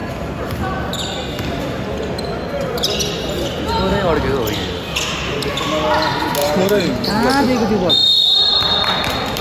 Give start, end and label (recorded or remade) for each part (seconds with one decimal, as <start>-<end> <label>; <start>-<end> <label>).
0.0-6.4 recorded; 6.4-7.1 remade; 7.1-8.0 recorded; 8.0-9.0 remade; 9.0-9.4 recorded